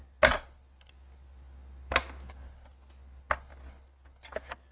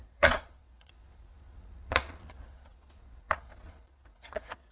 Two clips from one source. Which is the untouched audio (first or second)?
first